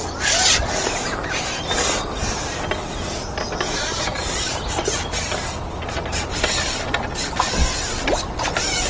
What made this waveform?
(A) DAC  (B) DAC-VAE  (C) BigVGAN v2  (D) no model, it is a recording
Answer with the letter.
D